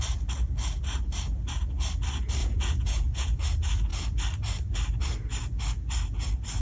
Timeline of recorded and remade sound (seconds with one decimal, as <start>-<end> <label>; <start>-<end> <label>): 0.0-2.4 recorded; 2.4-3.4 remade; 3.4-6.6 recorded